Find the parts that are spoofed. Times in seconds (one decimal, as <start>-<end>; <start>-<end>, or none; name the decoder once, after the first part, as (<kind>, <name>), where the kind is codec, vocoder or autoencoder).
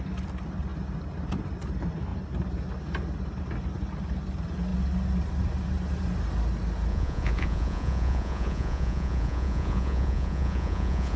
6.9-11.2 (vocoder, Vocos)